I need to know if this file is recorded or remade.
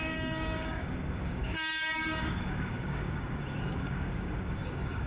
remade